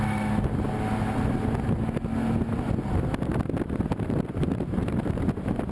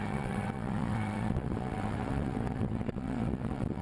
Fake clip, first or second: second